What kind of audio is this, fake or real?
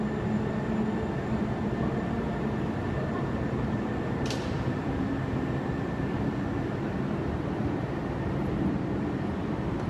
real